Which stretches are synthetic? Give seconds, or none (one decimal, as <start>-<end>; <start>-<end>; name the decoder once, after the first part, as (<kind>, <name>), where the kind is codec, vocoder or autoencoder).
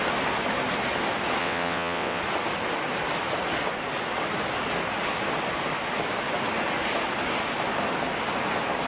1.4-2.2 (vocoder, WaveNeXt)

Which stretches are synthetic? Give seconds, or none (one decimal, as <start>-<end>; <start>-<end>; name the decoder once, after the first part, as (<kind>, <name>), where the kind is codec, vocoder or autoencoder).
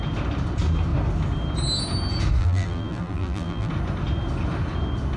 2.4-3.7 (vocoder, BigVGAN v2)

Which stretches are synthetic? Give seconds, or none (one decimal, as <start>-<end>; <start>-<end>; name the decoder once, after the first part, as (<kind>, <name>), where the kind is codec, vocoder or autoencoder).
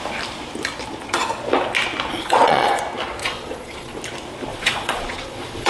2.1-2.8 (vocoder, Vocos); 3.2-4.0; 4.5-5.7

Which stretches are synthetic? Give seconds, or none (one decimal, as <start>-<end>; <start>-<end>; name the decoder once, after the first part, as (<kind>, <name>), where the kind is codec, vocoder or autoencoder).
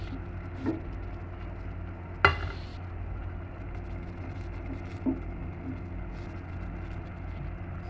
none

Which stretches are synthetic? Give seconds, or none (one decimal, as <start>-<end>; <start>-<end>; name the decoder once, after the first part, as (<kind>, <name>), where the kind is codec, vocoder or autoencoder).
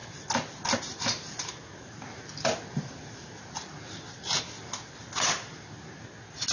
none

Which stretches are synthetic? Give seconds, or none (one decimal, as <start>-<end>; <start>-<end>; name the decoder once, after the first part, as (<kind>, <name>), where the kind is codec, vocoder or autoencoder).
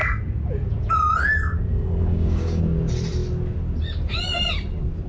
1.7-2.6 (codec, DAC)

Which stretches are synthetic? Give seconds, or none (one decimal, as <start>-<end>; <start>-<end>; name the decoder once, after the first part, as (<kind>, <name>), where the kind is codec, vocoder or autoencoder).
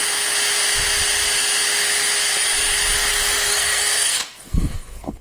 3.5-5.2 (codec, SNAC)